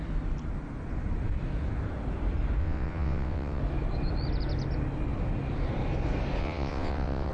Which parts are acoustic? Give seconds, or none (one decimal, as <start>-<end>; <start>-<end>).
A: 0.0-2.6; 3.6-6.4